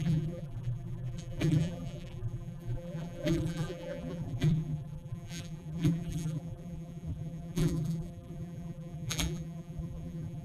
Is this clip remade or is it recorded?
remade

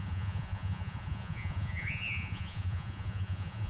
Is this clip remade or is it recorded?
remade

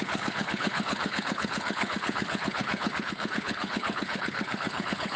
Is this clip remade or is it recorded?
remade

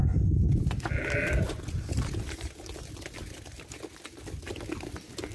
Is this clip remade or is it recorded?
recorded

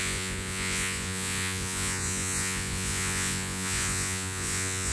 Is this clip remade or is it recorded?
remade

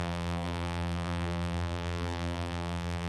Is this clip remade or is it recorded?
remade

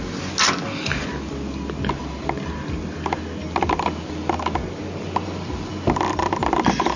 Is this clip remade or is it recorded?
recorded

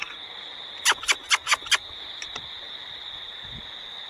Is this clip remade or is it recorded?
recorded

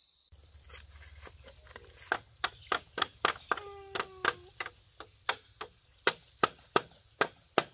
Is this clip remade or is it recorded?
recorded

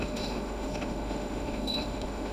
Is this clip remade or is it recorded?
remade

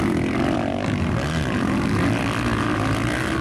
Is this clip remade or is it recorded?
recorded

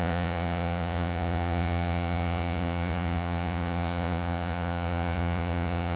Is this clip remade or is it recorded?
remade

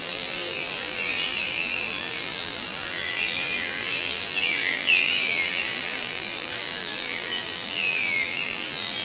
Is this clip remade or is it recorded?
remade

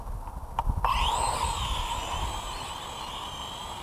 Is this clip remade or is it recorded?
recorded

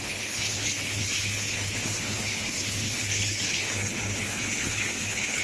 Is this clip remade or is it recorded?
remade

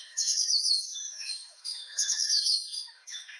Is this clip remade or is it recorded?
remade